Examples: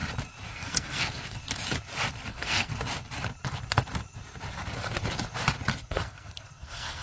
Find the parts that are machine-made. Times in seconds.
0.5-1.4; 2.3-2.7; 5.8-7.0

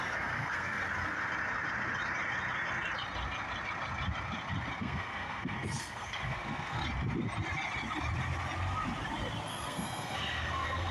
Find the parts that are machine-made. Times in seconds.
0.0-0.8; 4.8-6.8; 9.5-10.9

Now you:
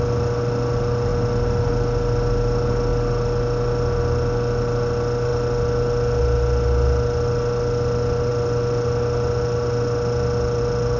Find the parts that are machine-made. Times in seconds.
none